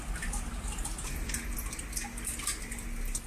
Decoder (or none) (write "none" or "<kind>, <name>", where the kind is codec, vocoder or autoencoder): none